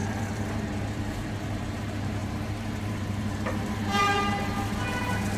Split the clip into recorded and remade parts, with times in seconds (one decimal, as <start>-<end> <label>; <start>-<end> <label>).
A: 0.0-5.4 remade